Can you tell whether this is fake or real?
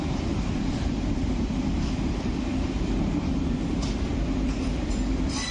fake